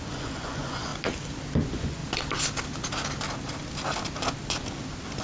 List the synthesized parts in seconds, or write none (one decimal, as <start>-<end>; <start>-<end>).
0.0-0.9; 1.6-2.0